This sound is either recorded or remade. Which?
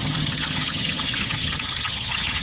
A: remade